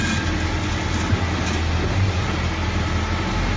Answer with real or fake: real